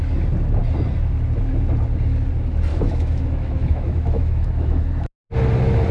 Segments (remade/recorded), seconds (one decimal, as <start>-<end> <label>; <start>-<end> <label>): 0.0-2.7 recorded; 2.7-4.9 remade; 4.9-5.9 recorded